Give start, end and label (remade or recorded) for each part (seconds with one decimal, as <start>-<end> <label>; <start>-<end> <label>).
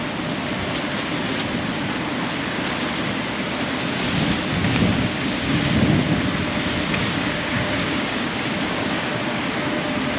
0.0-4.6 recorded; 4.6-5.6 remade; 5.6-7.0 recorded; 7.0-9.5 remade; 9.5-10.2 recorded